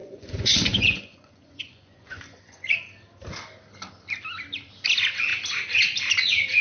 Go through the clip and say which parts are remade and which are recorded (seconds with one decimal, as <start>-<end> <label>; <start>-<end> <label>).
0.0-2.7 remade; 2.7-6.6 recorded